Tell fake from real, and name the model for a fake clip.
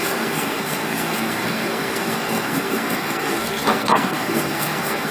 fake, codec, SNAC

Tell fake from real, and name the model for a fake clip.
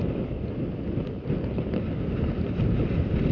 real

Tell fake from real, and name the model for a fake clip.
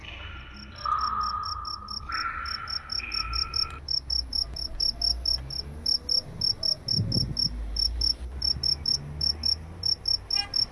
real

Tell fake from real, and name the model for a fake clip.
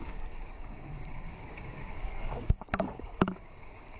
fake, codec, DAC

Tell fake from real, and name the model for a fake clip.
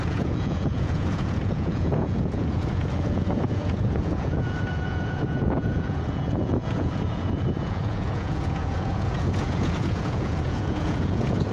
fake, vocoder, Vocos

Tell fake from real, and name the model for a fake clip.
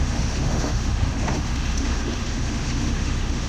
fake, autoencoder, DAC-VAE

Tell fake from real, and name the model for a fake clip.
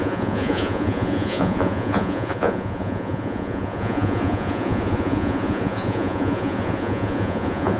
fake, vocoder, Vocos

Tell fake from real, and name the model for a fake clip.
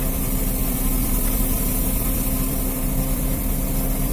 fake, vocoder, BigVGAN v2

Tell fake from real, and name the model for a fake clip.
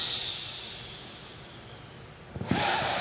real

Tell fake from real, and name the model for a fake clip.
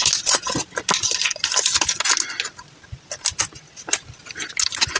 real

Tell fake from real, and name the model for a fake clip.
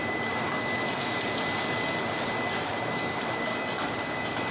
real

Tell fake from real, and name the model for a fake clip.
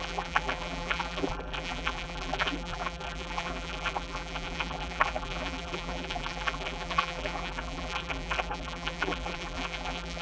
fake, vocoder, BigVGAN v2